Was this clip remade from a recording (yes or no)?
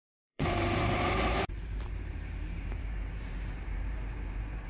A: yes